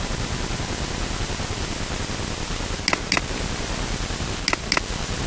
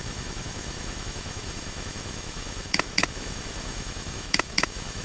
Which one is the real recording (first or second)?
first